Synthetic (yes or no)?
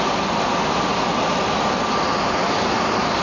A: no